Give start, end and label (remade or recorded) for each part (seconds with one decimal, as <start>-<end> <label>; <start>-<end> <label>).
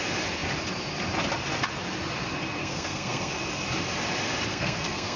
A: 0.0-2.6 recorded; 2.6-3.3 remade; 3.3-4.5 recorded; 4.5-5.2 remade